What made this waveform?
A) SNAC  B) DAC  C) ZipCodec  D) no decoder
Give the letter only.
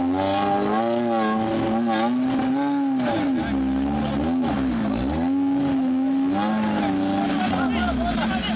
D